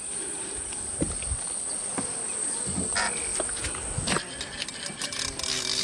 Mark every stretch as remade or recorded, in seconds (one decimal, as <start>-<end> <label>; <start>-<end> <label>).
0.0-5.8 recorded